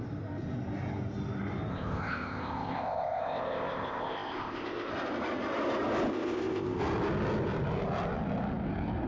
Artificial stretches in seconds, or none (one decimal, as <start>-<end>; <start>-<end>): 1.7-4.9; 6.1-6.8